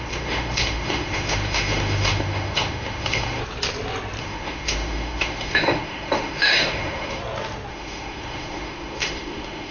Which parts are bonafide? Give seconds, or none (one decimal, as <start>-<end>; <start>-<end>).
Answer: 3.4-4.2; 7.2-7.7